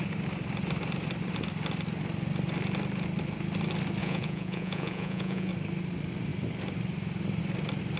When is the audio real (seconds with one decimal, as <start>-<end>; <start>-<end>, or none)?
0.0-4.0; 5.5-8.0